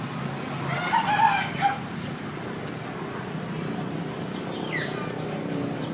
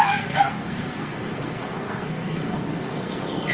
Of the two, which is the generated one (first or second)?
second